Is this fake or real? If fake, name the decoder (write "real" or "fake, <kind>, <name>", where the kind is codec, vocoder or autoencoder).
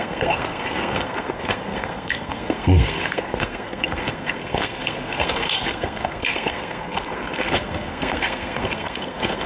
fake, codec, SNAC